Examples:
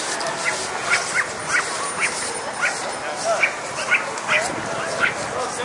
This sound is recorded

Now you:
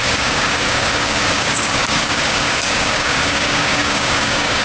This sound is remade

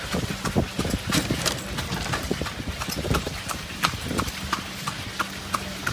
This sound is recorded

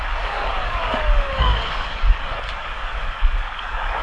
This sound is remade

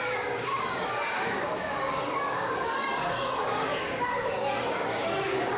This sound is remade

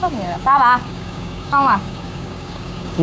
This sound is remade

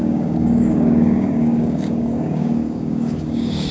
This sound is remade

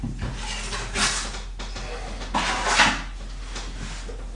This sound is recorded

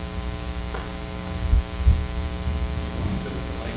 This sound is remade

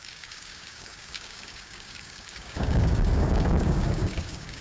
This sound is remade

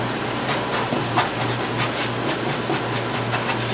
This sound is recorded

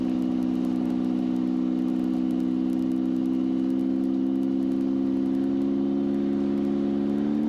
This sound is recorded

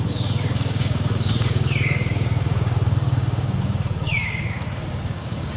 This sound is remade